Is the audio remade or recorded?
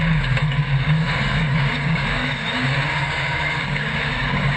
remade